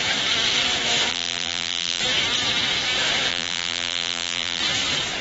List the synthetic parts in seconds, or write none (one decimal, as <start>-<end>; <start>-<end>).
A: 1.1-2.0; 3.3-4.6